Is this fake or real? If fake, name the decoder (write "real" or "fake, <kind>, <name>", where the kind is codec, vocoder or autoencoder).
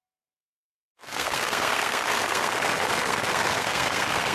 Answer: fake, codec, SNAC